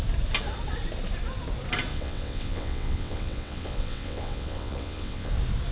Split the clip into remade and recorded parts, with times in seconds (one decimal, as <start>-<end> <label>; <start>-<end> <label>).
0.0-1.9 recorded; 1.9-5.3 remade; 5.3-5.7 recorded